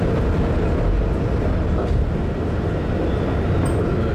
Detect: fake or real real